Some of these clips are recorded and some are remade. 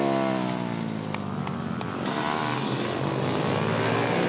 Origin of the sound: recorded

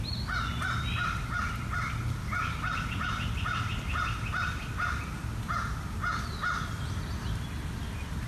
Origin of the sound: recorded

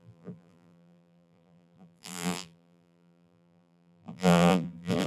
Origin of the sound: remade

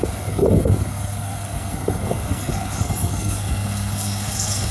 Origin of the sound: remade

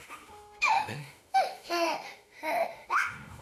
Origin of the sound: remade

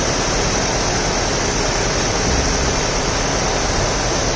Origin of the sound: recorded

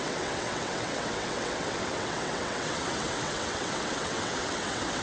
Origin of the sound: remade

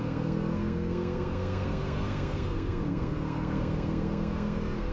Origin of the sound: remade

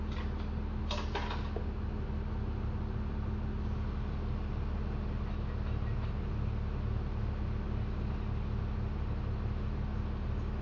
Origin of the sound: recorded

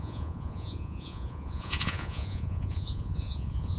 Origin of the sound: remade